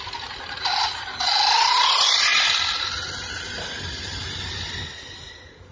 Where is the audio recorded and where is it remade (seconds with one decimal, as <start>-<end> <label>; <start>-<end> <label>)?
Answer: 0.0-5.7 recorded

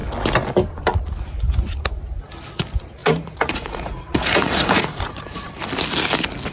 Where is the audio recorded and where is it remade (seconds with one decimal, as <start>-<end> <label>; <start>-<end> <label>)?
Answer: 0.0-3.0 recorded; 3.0-5.5 remade; 5.5-6.5 recorded